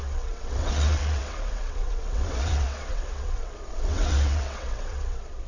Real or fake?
fake